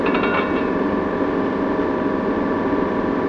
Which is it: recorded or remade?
recorded